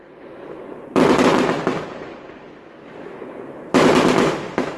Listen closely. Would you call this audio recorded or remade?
recorded